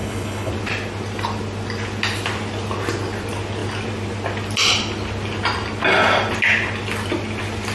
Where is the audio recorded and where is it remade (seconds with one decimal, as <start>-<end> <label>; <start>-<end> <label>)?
0.0-0.5 remade; 0.5-7.7 recorded